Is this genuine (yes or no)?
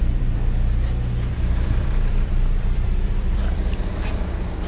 no